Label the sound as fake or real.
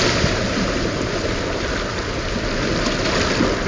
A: real